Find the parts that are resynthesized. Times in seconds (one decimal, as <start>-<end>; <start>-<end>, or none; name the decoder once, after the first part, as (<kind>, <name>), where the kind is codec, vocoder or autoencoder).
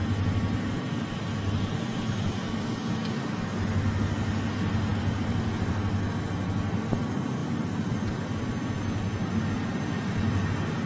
4.9-5.7 (vocoder, BigVGAN v2)